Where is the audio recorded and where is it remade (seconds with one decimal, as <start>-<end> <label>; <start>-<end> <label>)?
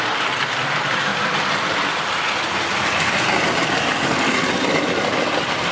0.0-5.7 remade